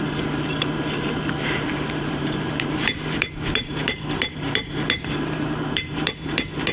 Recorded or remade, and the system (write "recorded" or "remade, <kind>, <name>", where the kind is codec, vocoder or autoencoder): remade, vocoder, BigVGAN v2